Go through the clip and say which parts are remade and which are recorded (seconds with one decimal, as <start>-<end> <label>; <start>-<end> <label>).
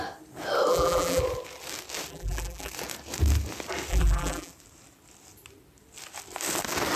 0.0-0.7 recorded; 0.7-1.2 remade; 1.2-2.1 recorded; 2.1-2.7 remade; 2.7-3.9 recorded; 3.9-4.5 remade; 4.5-7.0 recorded